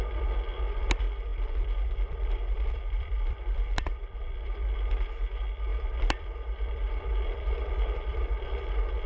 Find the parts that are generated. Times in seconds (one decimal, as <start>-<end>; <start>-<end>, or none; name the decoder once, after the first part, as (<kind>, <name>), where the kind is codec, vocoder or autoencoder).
1.3-4.3 (vocoder, BigVGAN v2); 5.7-9.1